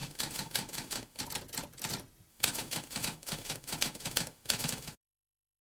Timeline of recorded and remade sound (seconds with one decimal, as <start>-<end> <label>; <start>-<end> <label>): 0.0-1.2 remade; 1.2-2.3 recorded; 2.3-5.6 remade

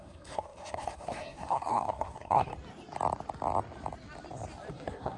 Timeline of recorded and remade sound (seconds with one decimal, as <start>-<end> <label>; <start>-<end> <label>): 0.0-2.5 remade; 2.5-4.7 recorded; 4.7-5.2 remade